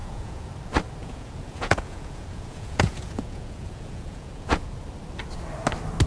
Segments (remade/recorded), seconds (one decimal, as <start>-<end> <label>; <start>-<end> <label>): 0.0-0.5 remade; 0.5-1.0 recorded; 1.0-4.7 remade; 4.7-6.1 recorded

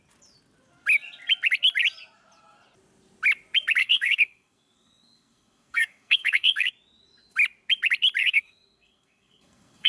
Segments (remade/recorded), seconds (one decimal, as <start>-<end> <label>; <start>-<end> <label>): 0.0-3.8 recorded; 3.8-6.7 remade; 6.7-8.2 recorded; 8.2-9.9 remade

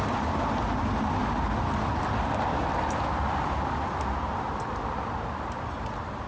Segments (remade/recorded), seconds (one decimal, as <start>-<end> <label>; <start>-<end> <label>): 0.0-6.3 recorded

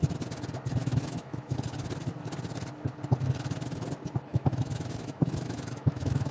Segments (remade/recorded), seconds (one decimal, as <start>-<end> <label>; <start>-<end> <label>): 0.0-0.8 recorded; 0.8-1.6 remade; 1.6-4.3 recorded; 4.3-6.3 remade

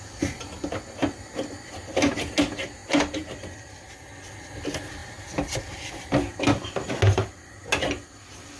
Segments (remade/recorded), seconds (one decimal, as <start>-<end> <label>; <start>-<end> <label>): 0.0-8.6 recorded

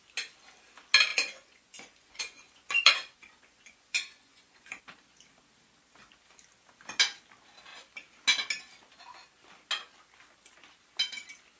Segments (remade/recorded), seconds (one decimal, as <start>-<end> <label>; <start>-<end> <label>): 0.0-1.1 recorded; 1.1-4.8 remade; 4.8-11.6 recorded

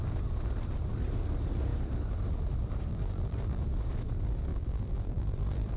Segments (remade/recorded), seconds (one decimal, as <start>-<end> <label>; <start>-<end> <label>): 0.0-2.9 recorded; 2.9-3.6 remade; 3.6-4.5 recorded; 4.5-5.8 remade